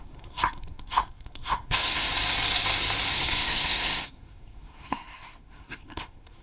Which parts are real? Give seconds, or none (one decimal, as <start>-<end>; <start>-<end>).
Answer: 2.1-3.1